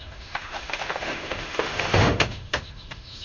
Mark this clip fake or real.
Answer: fake